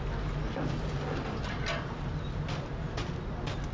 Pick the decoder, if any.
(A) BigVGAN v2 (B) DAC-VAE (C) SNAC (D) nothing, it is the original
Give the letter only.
D